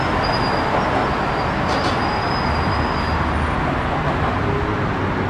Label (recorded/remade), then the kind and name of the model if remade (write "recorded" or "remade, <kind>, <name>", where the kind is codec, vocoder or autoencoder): recorded